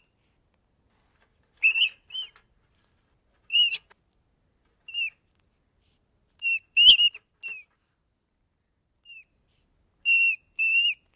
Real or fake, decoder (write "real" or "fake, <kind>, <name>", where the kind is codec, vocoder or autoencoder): real